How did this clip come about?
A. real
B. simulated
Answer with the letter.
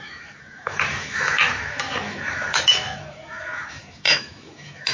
B